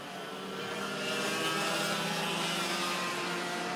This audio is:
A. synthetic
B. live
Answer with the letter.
B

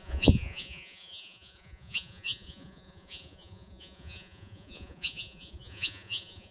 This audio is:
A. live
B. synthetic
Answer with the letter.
B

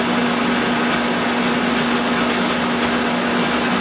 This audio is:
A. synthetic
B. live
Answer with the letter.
B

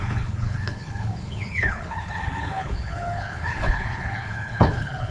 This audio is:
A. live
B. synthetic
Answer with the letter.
B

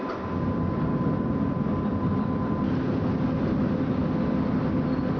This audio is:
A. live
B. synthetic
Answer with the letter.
A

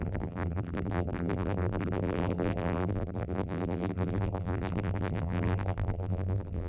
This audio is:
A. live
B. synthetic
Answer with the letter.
B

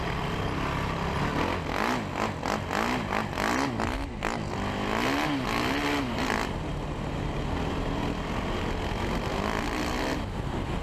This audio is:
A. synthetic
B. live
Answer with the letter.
B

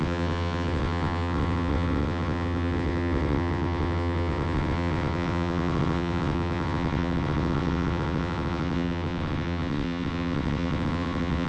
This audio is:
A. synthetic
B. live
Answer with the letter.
A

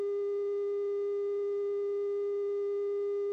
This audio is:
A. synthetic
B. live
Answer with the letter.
B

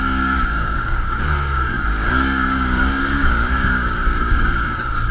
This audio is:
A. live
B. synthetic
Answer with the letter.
B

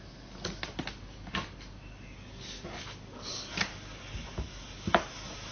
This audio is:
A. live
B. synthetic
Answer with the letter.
A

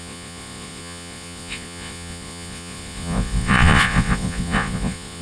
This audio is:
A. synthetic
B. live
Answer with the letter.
A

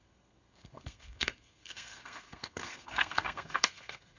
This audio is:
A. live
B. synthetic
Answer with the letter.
B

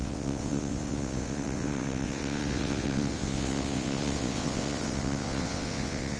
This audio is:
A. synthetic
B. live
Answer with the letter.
A